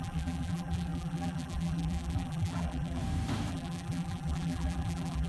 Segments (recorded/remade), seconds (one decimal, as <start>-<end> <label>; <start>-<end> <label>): 0.0-3.0 remade; 3.0-3.5 recorded; 3.5-5.3 remade

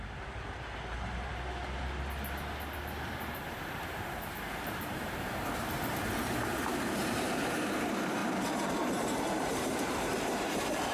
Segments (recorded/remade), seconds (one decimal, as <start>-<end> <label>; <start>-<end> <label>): 0.0-1.3 remade; 1.3-4.3 recorded; 4.3-10.9 remade

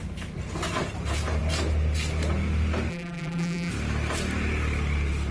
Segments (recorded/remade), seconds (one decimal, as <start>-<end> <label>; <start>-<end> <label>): 0.0-2.9 recorded; 2.9-3.7 remade; 3.7-5.3 recorded

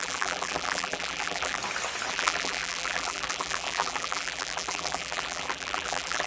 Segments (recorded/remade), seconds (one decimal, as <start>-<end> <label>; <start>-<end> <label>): 0.0-1.6 remade; 1.6-2.1 recorded; 2.1-6.3 remade

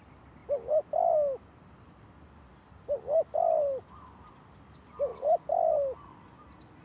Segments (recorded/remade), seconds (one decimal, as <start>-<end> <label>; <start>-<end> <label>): 0.0-6.8 recorded

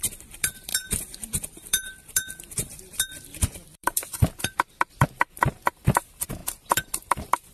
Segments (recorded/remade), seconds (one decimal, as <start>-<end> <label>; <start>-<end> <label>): 0.0-7.5 remade